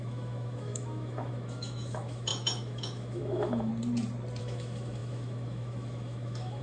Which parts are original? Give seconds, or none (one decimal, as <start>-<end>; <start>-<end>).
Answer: 3.7-4.4